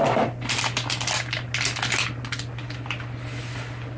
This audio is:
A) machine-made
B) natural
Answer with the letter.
B